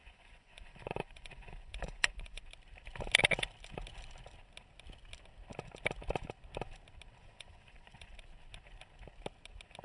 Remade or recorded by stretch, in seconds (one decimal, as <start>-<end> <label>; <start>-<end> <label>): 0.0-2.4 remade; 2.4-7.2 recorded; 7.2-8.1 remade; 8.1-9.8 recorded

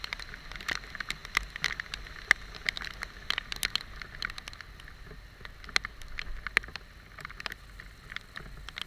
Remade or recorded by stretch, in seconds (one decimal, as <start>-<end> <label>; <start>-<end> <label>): 0.0-8.9 recorded

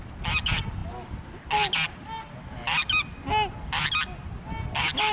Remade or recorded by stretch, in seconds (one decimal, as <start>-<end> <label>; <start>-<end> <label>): 0.0-5.1 recorded

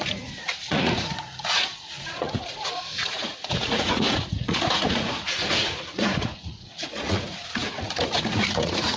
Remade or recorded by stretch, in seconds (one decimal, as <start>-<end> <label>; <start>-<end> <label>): 0.0-9.0 remade

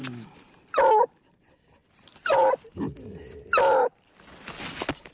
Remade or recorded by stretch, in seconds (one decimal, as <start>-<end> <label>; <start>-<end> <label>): 0.0-5.1 recorded

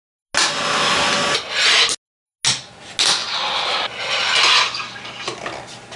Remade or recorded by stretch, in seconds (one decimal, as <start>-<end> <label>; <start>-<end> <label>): 0.0-6.0 recorded